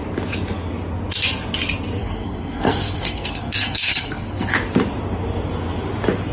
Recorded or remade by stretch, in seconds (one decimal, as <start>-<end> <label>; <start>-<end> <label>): 0.0-2.0 recorded; 2.0-4.5 remade; 4.5-6.3 recorded